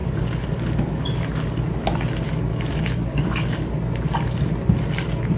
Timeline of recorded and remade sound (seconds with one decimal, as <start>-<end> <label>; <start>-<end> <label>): 0.0-1.1 remade; 1.1-2.5 recorded; 2.5-3.7 remade; 3.7-5.4 recorded